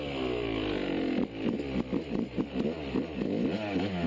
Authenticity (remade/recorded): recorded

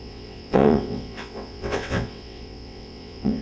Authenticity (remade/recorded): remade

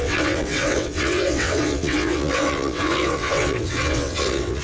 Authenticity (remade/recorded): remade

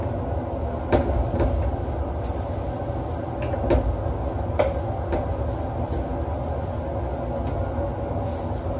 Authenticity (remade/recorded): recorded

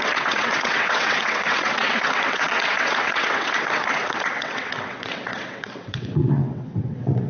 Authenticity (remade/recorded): remade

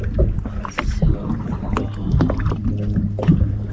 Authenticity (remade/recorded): recorded